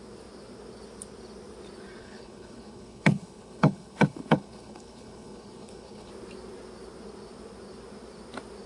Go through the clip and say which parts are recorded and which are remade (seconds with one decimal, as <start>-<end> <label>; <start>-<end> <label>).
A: 0.0-2.0 recorded; 2.0-6.1 remade; 6.1-8.7 recorded